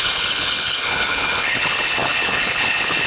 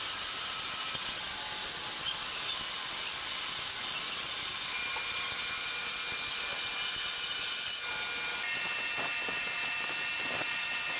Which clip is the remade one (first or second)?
first